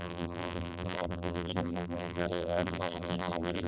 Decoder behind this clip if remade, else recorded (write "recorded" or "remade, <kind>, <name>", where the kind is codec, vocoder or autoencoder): remade, vocoder, BigVGAN v2